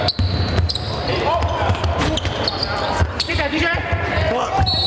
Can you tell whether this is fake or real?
fake